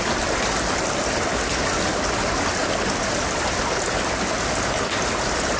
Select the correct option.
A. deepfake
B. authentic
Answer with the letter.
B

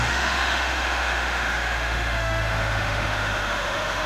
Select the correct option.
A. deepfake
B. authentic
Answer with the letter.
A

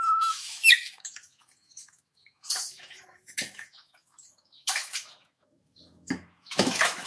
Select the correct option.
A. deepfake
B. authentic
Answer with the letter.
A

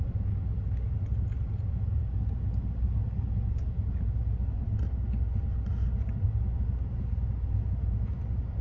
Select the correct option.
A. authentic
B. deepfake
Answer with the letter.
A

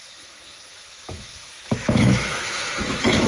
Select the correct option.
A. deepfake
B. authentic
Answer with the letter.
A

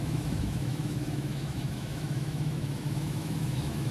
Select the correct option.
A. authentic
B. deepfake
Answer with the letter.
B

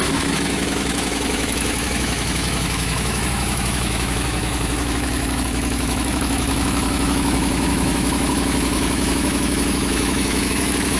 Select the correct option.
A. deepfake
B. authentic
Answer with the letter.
A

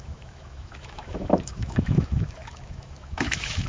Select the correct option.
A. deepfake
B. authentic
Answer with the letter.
A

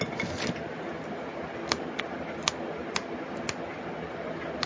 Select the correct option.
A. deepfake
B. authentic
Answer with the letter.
B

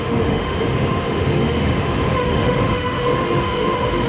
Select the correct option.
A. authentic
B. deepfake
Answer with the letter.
B